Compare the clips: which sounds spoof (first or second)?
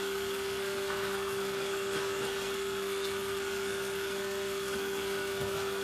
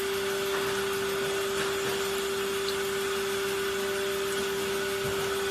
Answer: first